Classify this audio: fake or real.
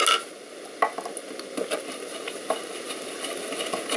real